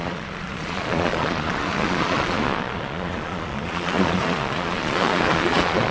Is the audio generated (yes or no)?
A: yes